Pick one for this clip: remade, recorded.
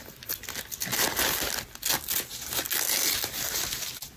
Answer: recorded